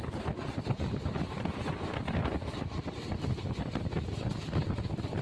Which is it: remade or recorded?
remade